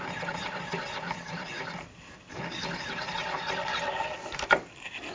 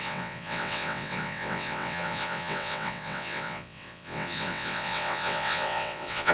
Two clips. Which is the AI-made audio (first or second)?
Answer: second